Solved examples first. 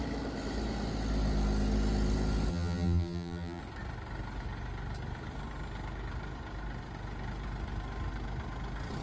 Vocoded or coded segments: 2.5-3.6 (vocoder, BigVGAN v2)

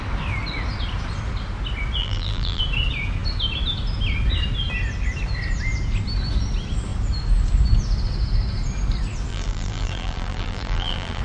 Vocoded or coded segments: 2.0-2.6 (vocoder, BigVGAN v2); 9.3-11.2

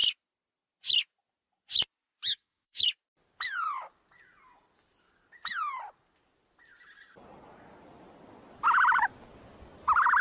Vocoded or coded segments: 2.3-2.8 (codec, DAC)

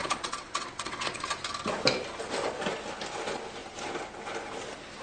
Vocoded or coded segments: 0.0-1.3 (vocoder, WaveNeXt)

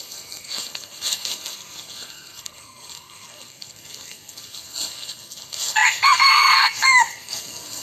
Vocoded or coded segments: 0.0-7.8 (codec, SNAC)

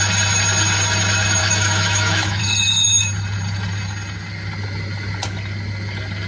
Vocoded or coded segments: 1.4-2.4 (autoencoder, DAC-VAE)

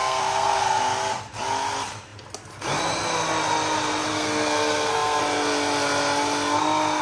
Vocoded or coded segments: 0.0-0.8 (codec, SNAC); 4.1-5.2